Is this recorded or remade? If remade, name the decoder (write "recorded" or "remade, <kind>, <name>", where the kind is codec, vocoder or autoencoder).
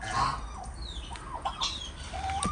recorded